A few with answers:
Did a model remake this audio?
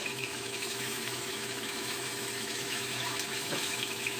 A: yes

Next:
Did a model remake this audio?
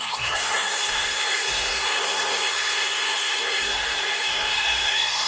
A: yes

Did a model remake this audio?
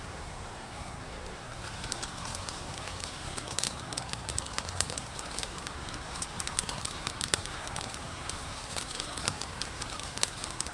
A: yes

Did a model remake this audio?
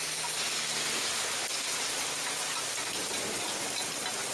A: no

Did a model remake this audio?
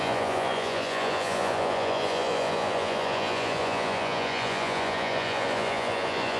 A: yes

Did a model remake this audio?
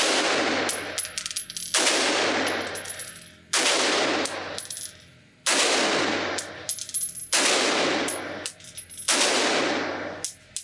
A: no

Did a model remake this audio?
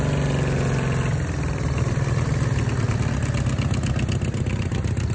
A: no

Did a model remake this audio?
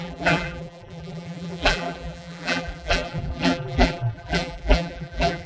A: yes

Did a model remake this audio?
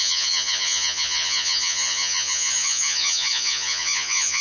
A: yes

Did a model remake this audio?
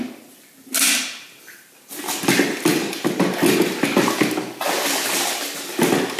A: no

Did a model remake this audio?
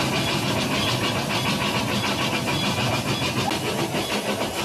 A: no